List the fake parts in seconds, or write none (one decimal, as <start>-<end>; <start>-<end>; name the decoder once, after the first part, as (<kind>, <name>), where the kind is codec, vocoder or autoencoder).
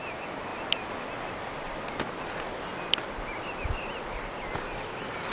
none